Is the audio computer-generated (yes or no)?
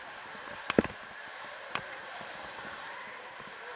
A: no